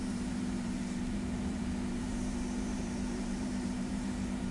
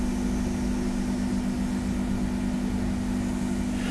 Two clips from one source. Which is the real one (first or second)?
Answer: second